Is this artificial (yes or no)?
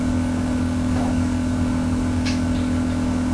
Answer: yes